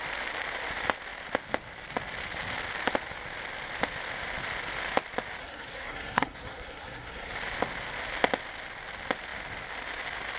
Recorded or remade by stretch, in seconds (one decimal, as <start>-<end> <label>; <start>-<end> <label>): 0.0-5.4 recorded; 5.4-7.3 remade; 7.3-10.4 recorded